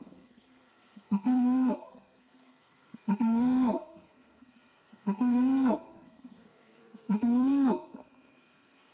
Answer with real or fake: fake